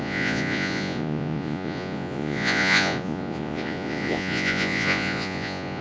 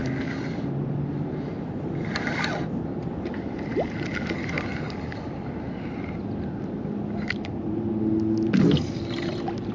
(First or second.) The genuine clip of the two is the second